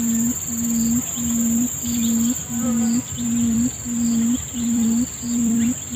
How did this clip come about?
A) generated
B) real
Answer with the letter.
A